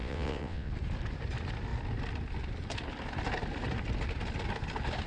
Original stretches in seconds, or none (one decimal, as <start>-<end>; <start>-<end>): 0.7-5.1